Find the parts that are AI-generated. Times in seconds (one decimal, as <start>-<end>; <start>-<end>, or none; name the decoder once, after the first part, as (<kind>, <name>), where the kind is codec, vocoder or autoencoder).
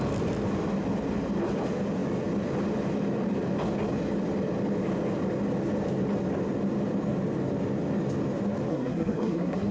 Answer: 8.7-9.7 (codec, SNAC)